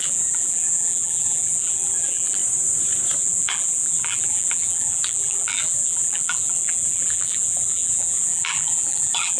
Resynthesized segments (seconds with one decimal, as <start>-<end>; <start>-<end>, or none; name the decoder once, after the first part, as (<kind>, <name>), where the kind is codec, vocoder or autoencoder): 0.0-2.4 (vocoder, BigVGAN v2); 3.2-9.4